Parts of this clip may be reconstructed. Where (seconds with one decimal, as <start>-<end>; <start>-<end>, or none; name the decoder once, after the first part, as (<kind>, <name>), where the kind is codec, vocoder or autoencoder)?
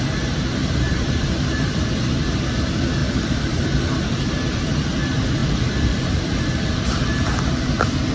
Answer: 3.0-4.6 (vocoder, BigVGAN v2); 5.4-6.8